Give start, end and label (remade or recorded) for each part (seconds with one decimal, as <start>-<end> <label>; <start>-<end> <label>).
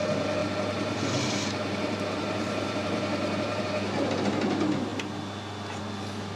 0.0-0.4 recorded; 0.4-3.6 remade; 3.6-6.4 recorded